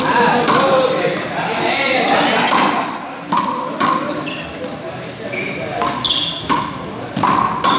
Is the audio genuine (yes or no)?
yes